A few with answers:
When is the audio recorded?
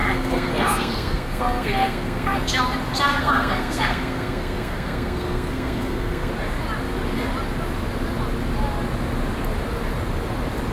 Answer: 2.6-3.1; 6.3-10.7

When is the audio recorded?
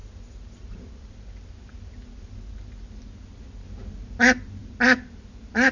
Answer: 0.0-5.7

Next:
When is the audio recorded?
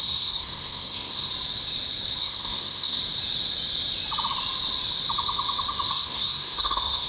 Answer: 1.3-2.2; 3.0-5.9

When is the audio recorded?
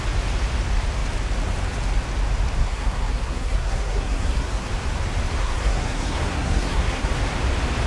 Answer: 0.0-2.6; 4.7-5.4; 7.1-7.9